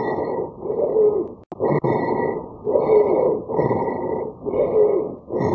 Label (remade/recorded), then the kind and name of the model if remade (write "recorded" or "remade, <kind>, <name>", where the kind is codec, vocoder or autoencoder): recorded